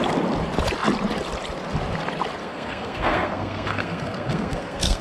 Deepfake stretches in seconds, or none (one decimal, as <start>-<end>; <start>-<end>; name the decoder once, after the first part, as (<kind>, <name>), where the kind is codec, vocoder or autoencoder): 2.4-5.0 (codec, SNAC)